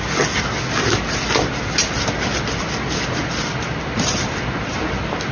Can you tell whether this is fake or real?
real